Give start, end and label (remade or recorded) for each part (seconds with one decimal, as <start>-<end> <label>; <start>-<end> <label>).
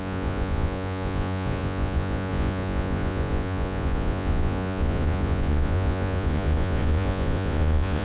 0.0-8.0 remade